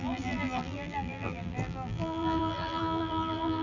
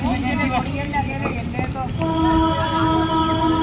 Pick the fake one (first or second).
first